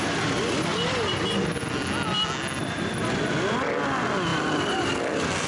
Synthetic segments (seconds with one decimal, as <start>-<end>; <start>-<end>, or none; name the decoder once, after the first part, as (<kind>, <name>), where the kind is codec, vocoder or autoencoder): none